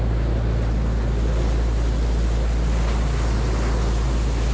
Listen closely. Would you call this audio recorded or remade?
recorded